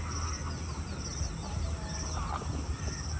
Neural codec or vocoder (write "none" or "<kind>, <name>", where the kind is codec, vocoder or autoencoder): none